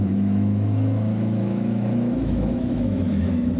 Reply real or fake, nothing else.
fake